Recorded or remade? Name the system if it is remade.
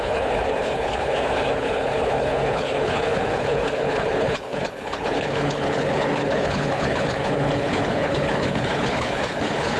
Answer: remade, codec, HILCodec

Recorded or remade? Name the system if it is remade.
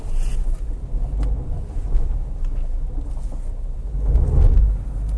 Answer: recorded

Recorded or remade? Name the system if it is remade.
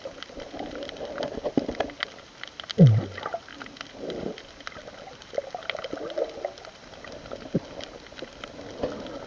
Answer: recorded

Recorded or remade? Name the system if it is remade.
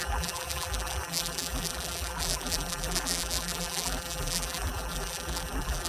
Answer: remade, vocoder, BigVGAN v2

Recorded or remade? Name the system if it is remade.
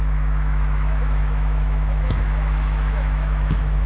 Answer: remade, autoencoder, DAC-VAE